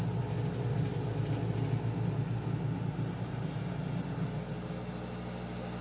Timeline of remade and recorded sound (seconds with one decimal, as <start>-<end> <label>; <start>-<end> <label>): 0.0-5.8 recorded